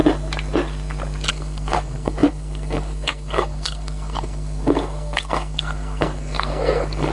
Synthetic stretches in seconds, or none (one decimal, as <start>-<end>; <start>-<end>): 1.3-7.1